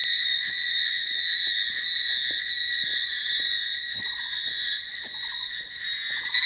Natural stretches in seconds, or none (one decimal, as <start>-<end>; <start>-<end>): 0.0-3.6; 5.5-6.5

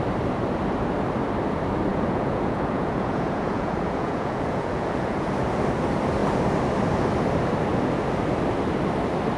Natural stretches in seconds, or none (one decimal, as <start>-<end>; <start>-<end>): 0.0-1.9; 5.4-9.4

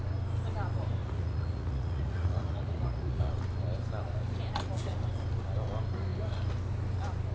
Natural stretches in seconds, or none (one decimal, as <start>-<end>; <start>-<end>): 0.0-1.0; 3.3-7.3

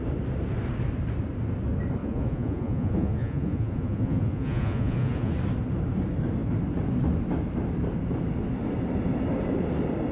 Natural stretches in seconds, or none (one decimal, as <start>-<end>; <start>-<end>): 0.0-2.0; 5.3-10.1

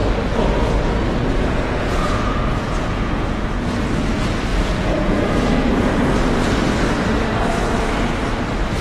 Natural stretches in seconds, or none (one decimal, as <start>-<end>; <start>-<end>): 0.0-1.2; 3.5-4.5; 6.0-8.8

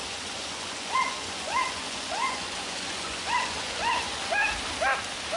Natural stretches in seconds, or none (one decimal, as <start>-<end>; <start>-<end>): 4.4-5.4

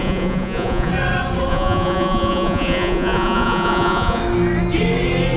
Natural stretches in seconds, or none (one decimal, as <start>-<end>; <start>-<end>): 0.9-1.5; 4.2-5.4